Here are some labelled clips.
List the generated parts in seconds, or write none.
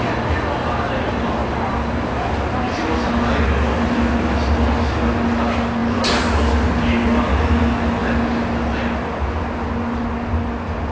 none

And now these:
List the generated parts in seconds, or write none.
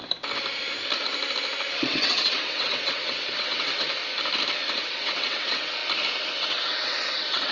1.7-4.0; 4.9-5.8; 6.3-7.5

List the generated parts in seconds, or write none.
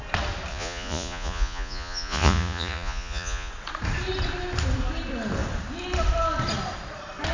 0.5-3.5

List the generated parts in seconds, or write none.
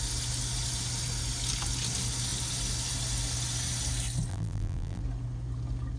4.3-5.0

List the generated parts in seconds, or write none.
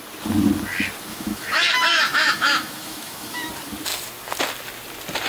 1.1-3.5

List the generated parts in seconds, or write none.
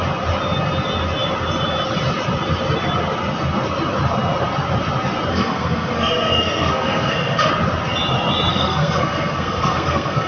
5.3-7.5; 8.5-10.3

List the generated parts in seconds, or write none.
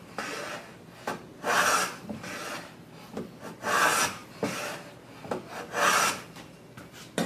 none